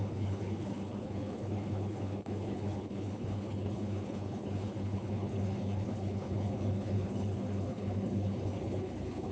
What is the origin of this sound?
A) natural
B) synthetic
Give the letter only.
B